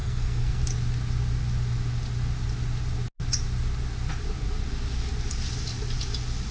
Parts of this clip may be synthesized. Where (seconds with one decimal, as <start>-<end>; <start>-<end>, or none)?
0.0-0.6